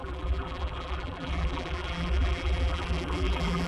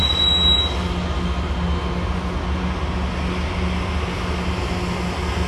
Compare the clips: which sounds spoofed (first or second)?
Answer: first